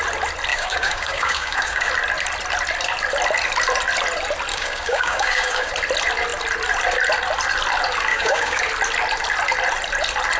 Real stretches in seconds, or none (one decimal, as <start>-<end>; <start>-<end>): 0.0-0.5; 1.9-4.5; 5.7-8.1; 8.6-10.4